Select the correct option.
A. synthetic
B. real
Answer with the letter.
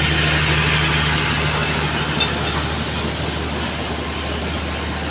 B